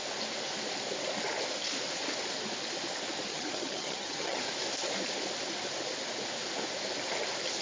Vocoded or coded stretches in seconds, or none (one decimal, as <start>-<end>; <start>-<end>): 3.3-4.4

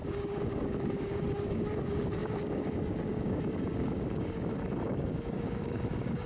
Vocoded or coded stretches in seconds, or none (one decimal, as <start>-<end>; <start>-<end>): 0.0-6.3